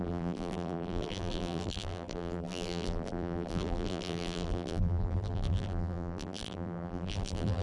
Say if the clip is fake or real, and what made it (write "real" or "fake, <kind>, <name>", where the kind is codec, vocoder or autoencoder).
fake, vocoder, BigVGAN v2